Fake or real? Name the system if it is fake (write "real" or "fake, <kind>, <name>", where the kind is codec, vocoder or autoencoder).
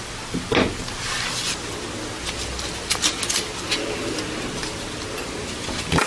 real